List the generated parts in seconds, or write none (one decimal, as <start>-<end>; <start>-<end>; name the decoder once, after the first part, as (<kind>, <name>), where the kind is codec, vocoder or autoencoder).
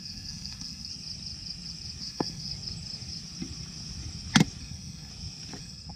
0.0-0.9 (codec, SNAC); 2.0-2.5; 4.6-5.1; 5.6-6.0